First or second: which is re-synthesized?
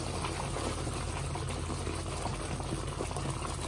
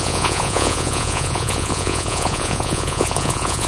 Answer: second